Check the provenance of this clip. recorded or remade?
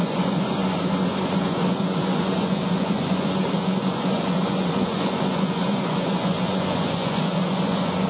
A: remade